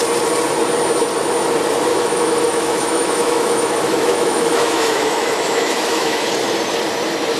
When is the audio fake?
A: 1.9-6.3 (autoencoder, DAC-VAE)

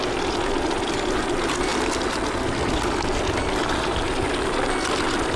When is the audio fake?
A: none

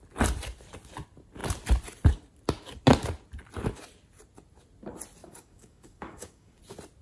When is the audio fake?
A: 5.2-6.6 (codec, DAC)

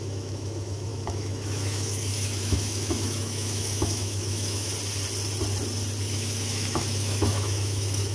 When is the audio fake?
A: 0.0-4.7 (autoencoder, DAC-VAE); 6.0-8.1